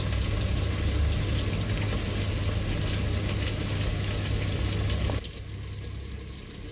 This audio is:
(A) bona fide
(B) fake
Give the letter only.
A